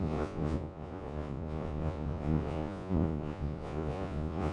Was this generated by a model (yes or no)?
yes